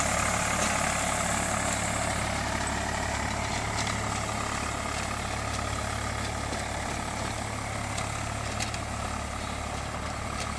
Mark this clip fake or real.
real